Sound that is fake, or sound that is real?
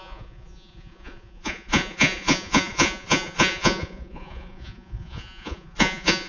fake